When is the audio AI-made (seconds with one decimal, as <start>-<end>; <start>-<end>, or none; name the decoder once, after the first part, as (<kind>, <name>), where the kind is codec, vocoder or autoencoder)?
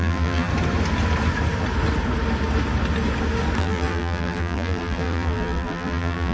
0.0-0.5 (vocoder, BigVGAN v2); 3.6-6.3